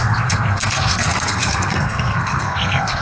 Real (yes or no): no